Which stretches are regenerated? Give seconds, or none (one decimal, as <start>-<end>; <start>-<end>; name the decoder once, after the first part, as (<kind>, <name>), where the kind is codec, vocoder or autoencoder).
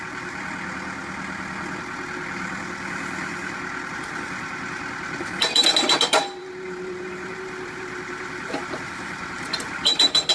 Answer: 6.4-10.3 (vocoder, BigVGAN v2)